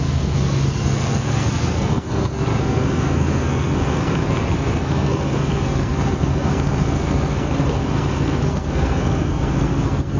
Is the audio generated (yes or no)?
yes